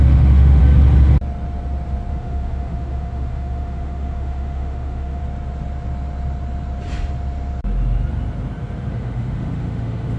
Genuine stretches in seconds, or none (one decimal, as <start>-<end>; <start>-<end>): 0.6-2.1; 5.2-8.9